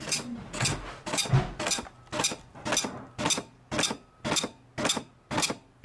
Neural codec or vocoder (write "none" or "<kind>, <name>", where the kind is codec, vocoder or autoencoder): none